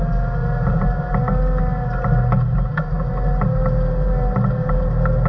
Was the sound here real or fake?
real